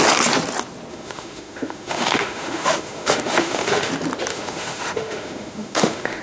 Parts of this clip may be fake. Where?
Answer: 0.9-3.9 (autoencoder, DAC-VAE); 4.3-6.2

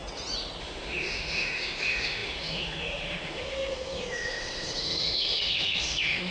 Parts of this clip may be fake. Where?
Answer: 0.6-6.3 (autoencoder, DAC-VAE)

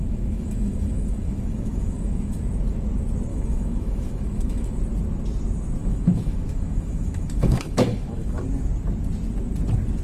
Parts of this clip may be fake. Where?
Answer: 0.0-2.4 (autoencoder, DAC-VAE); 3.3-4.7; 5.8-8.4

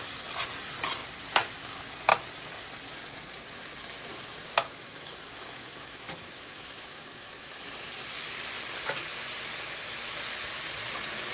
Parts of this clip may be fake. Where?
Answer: 4.6-7.6 (autoencoder, DAC-VAE)

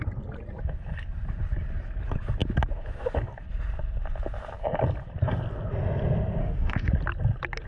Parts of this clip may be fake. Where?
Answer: 6.4-6.9 (autoencoder, DAC-VAE)

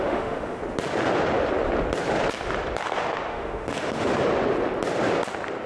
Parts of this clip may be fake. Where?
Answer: 0.0-0.6 (autoencoder, DAC-VAE); 3.3-4.1

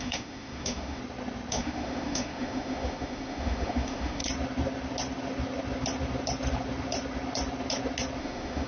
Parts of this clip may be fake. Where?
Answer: 0.0-1.0 (autoencoder, DAC-VAE); 1.5-4.2; 8.2-8.7

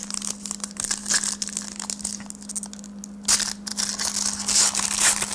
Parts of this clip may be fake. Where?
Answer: none